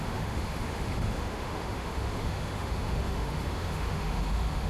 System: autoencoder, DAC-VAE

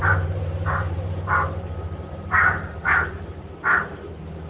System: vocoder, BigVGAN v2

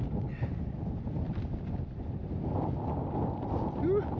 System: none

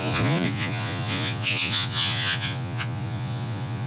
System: vocoder, Vocos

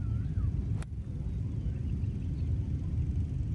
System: none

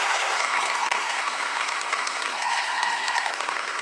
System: codec, SNAC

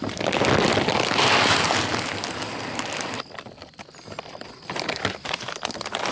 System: none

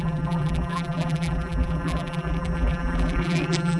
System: vocoder, BigVGAN v2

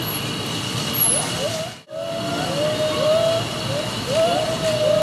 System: none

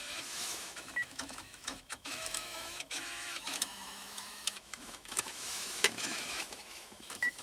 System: autoencoder, DAC-VAE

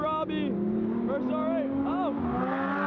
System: none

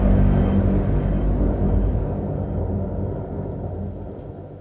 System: none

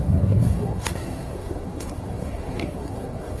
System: codec, SNAC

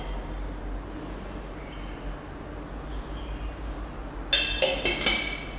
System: none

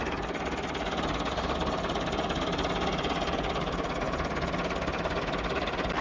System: none